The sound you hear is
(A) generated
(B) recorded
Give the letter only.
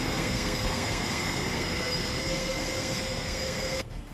A